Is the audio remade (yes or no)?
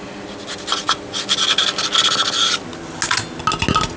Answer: no